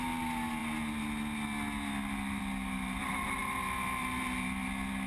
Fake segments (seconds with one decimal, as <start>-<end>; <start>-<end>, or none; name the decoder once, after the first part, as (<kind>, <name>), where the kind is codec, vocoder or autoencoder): none